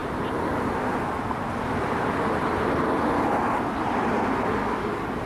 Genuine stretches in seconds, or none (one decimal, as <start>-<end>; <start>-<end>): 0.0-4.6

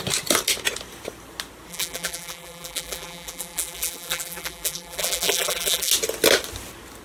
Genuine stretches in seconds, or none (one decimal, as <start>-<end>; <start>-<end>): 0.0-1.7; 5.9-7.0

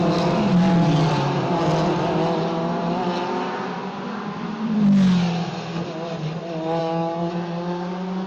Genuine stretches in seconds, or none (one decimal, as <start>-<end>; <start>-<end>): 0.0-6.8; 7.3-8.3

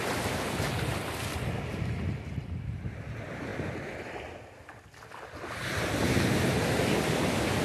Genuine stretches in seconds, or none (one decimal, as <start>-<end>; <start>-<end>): 0.0-7.6

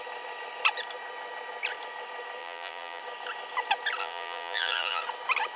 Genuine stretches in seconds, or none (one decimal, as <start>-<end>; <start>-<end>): 0.0-2.4; 3.0-4.0; 5.0-5.6

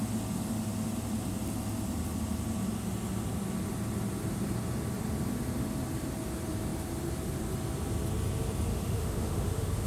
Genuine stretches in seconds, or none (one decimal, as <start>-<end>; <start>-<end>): 0.0-8.7